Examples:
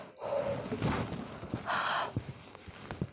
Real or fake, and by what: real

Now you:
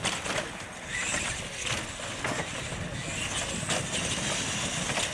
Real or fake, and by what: real